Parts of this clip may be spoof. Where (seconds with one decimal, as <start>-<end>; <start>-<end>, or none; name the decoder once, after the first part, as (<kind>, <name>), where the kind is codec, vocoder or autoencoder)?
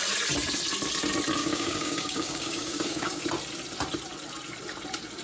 1.4-3.2 (codec, DAC)